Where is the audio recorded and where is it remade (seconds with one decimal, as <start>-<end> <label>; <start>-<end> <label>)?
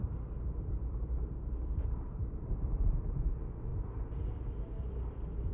0.0-3.3 remade; 3.3-3.7 recorded; 3.7-4.6 remade; 4.6-5.5 recorded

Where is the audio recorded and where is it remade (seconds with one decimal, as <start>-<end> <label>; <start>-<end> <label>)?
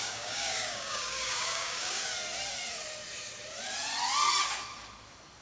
0.0-2.1 remade; 2.1-5.4 recorded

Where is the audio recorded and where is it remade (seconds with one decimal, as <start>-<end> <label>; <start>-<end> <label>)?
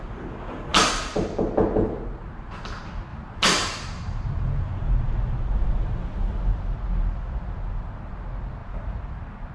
0.0-0.7 recorded; 0.7-1.4 remade; 1.4-3.1 recorded; 3.1-5.3 remade; 5.3-8.6 recorded; 8.6-9.5 remade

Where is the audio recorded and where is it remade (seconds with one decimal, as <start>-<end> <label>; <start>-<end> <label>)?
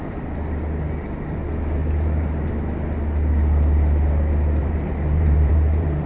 0.0-1.8 recorded; 1.8-2.5 remade; 2.5-4.6 recorded; 4.6-6.1 remade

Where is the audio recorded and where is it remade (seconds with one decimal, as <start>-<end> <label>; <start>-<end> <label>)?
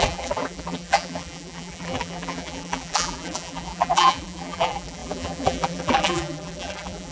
0.0-7.1 remade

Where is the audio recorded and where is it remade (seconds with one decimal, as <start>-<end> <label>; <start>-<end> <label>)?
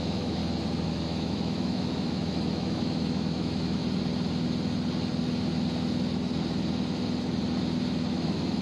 0.0-0.4 remade; 0.4-0.9 recorded; 0.9-3.8 remade; 3.8-8.1 recorded; 8.1-8.6 remade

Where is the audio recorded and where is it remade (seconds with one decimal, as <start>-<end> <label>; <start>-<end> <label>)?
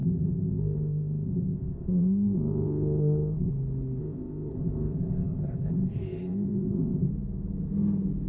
0.0-3.5 remade; 3.5-4.0 recorded; 4.0-7.1 remade; 7.1-8.3 recorded